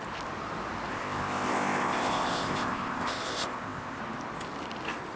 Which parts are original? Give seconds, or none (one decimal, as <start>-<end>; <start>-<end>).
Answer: 0.0-0.9; 4.0-5.2